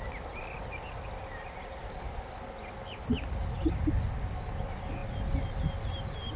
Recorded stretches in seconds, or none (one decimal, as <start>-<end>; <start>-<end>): 0.0-6.4